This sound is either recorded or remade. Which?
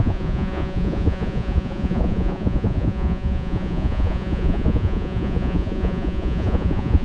remade